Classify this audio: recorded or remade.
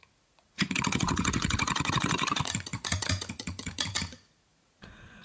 remade